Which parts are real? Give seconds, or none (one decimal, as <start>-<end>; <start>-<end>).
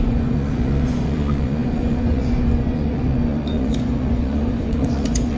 none